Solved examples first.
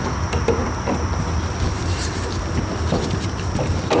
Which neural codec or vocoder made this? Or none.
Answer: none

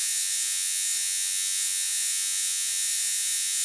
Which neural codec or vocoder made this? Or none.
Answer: vocoder, Vocos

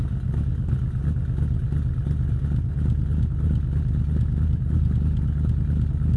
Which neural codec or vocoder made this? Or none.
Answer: none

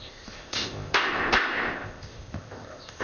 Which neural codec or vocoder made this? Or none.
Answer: codec, ZipCodec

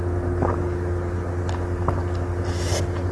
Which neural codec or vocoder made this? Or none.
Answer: none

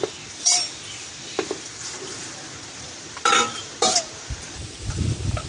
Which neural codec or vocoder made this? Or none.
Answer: vocoder, BigVGAN v2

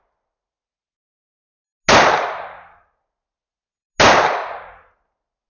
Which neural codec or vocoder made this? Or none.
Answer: none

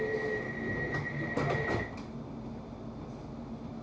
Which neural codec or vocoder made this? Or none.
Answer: none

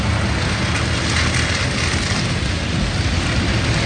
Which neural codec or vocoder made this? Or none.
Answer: none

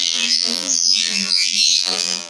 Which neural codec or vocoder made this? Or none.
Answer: vocoder, BigVGAN v2